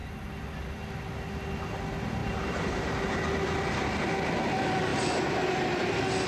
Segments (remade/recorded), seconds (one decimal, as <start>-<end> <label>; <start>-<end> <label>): 0.0-2.2 recorded; 2.2-3.0 remade; 3.0-6.3 recorded